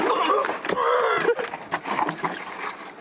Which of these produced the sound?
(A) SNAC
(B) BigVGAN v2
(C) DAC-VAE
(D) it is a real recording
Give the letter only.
B